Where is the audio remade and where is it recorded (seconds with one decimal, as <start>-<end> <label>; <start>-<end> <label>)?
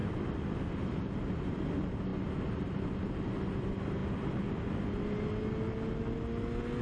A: 0.0-6.8 recorded